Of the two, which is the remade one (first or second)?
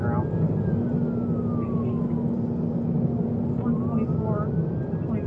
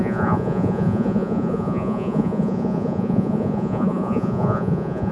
second